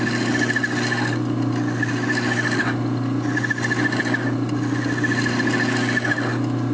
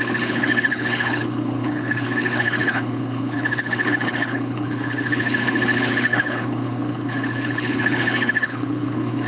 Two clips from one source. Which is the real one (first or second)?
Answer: first